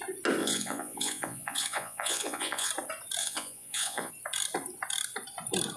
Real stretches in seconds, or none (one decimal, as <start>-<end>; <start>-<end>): 0.0-0.4; 2.7-3.2; 4.1-5.8

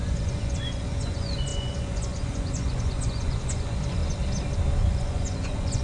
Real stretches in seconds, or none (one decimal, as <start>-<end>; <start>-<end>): 4.0-4.8

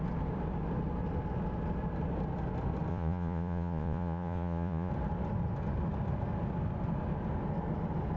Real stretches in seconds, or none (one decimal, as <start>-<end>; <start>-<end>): 0.0-2.9; 4.9-8.2

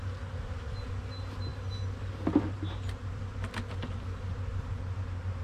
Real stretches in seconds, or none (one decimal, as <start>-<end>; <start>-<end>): 0.0-5.4

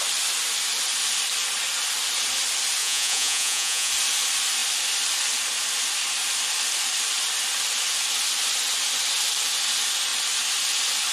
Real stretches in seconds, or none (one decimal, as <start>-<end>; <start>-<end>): 0.0-2.8; 3.9-11.1

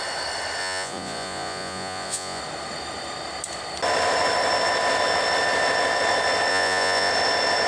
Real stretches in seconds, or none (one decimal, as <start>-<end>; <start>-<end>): 0.0-0.6; 2.4-6.5; 7.1-7.7